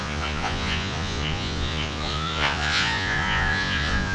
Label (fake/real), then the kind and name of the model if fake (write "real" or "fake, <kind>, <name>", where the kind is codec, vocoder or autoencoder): fake, vocoder, Vocos